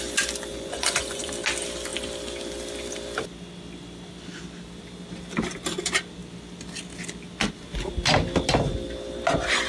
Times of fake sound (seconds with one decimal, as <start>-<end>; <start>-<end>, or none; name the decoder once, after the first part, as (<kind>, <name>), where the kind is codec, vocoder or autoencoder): 0.5-1.3 (vocoder, Vocos)